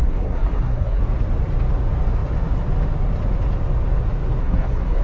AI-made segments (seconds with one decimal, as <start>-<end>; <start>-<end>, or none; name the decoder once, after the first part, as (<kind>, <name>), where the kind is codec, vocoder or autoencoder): 0.0-1.0 (codec, SNAC); 4.4-5.0